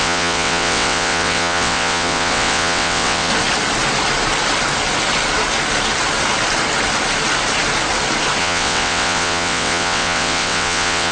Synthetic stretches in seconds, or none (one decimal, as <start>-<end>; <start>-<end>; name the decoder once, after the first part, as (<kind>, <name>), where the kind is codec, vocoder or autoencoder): 0.0-3.3 (vocoder, WaveNeXt); 8.4-11.1